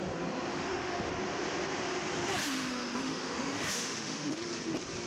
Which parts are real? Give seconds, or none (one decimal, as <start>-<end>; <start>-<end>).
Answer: 0.0-0.5; 1.1-2.4; 4.4-5.1